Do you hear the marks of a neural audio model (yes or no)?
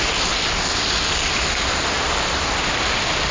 no